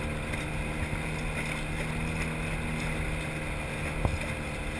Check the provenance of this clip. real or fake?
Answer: real